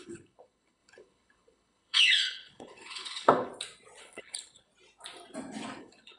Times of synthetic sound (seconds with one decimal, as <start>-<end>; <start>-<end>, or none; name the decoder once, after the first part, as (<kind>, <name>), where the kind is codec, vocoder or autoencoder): 0.0-3.5 (codec, HILCodec); 4.0-4.7; 5.8-6.2

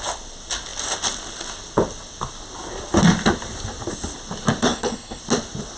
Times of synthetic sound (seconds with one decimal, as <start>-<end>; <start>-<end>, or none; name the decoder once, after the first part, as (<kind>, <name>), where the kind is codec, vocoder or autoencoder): 4.7-5.2 (codec, HILCodec)

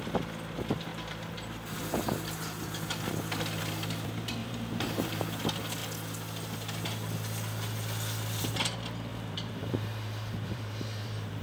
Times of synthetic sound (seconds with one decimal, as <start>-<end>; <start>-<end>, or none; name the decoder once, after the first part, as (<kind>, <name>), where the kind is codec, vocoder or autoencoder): 4.4-5.2 (vocoder, BigVGAN v2); 9.1-11.4

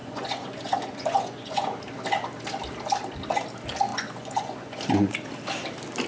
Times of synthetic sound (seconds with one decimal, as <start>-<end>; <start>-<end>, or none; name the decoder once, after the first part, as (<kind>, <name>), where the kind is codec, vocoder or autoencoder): 0.0-1.8 (vocoder, Vocos); 3.9-4.8